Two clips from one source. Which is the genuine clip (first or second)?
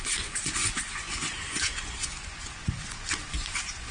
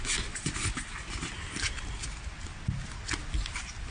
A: second